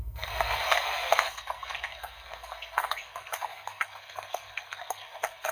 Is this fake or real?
fake